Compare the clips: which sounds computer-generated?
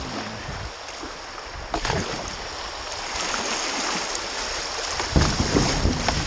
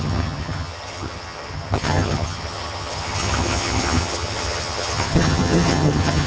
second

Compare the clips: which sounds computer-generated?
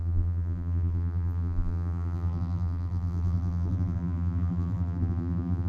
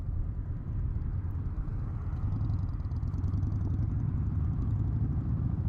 first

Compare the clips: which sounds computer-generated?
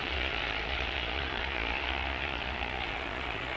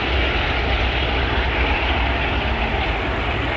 first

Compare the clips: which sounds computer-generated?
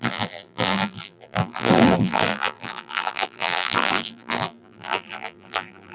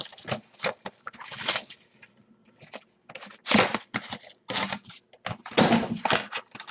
first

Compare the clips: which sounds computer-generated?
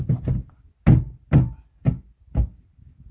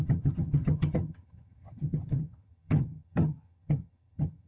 second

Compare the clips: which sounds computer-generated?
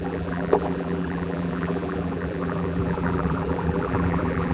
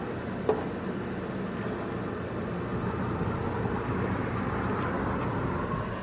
first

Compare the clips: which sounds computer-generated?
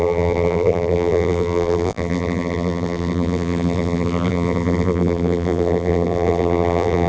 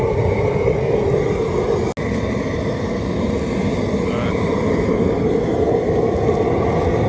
first